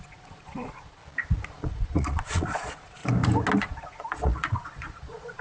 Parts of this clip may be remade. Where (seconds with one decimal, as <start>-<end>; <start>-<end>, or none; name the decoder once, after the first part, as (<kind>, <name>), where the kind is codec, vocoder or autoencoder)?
0.0-1.0 (vocoder, Vocos); 1.5-3.0; 3.6-5.4